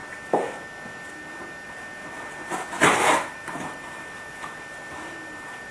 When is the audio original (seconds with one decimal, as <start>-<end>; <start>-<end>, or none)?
0.0-5.7